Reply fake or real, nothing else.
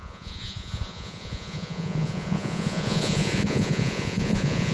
fake